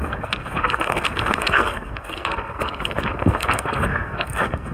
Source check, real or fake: fake